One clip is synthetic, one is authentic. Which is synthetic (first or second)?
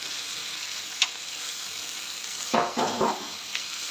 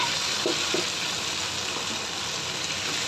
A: first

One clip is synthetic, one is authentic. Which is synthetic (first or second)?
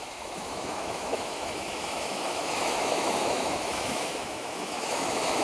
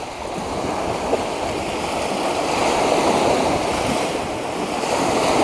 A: first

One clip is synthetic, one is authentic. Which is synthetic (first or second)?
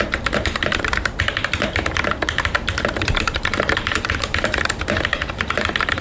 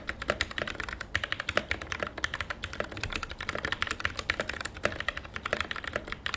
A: first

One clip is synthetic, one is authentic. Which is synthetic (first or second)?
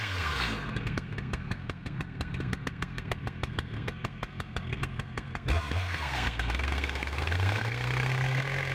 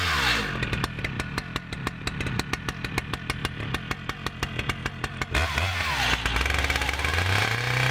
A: first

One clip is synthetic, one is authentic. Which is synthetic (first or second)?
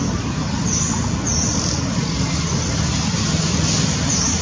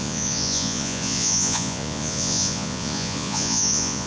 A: second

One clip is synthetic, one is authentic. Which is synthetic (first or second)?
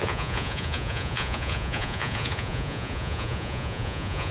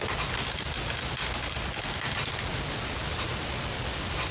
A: first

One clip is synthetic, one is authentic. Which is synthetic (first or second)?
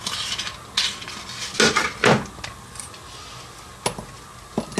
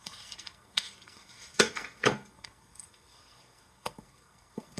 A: second